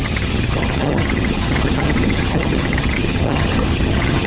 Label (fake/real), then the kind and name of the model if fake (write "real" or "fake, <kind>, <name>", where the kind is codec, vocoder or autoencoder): fake, vocoder, HiFi-GAN